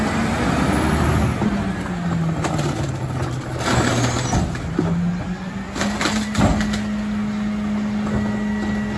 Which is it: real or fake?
real